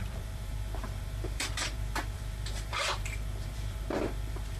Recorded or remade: remade